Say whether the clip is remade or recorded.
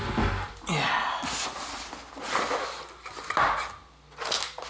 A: recorded